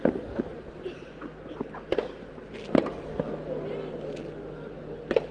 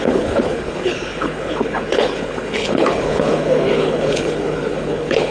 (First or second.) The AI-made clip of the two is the second